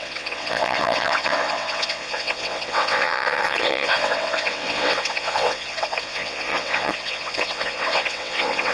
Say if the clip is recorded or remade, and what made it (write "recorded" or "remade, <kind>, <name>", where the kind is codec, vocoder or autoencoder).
remade, vocoder, WaveNeXt